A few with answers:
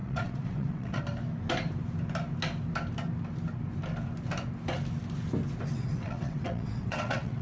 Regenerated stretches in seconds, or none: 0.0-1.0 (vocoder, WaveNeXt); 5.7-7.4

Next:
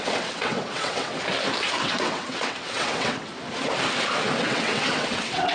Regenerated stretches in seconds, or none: 0.0-1.2 (vocoder, WaveNeXt); 1.8-3.3; 4.4-5.5

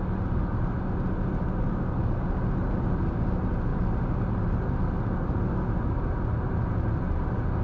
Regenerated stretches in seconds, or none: none

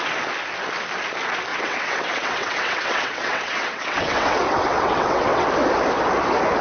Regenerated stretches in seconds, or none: 1.5-5.5 (vocoder, WaveNeXt)

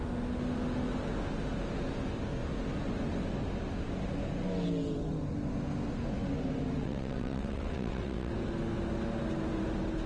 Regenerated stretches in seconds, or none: 6.8-8.3 (vocoder, WaveNeXt)

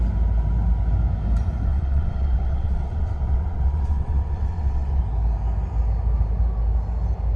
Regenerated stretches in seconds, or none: 1.7-5.0 (vocoder, WaveNeXt)

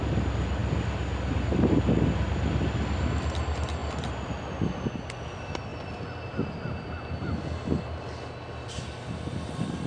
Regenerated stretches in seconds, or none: none

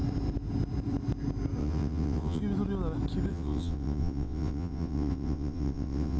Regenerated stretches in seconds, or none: 1.6-2.4 (vocoder, WaveNeXt); 3.3-6.2